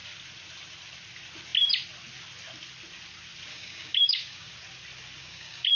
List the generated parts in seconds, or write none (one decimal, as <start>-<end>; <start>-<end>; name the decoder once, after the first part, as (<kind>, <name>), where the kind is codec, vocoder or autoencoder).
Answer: 3.5-4.5 (codec, DAC); 5.2-5.8